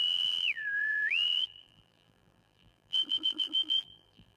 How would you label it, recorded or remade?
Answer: remade